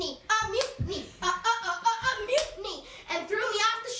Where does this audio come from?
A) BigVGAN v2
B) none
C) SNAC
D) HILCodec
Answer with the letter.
A